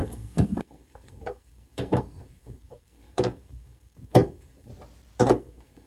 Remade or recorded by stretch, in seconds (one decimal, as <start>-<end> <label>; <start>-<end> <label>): 0.0-4.7 remade; 4.7-5.2 recorded; 5.2-5.9 remade